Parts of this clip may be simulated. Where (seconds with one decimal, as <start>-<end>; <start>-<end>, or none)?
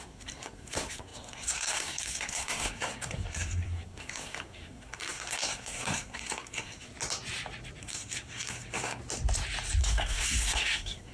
0.0-6.9; 7.8-9.0; 9.8-11.1